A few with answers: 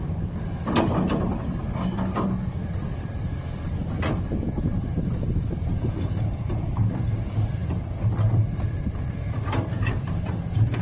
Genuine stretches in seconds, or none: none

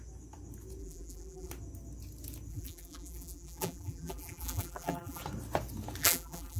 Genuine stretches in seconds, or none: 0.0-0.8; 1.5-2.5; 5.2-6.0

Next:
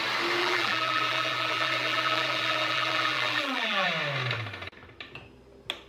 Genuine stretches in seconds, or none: 0.0-0.4; 3.9-5.9

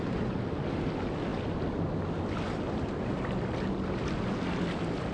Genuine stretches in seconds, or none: 0.0-5.1

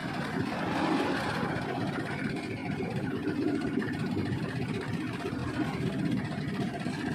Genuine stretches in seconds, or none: 0.0-2.6; 4.4-5.4; 6.4-7.1

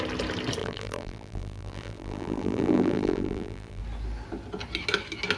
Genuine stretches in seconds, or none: 0.0-0.6; 3.8-5.4

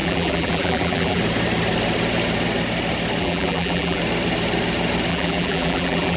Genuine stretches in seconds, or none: 1.2-3.2; 4.0-5.1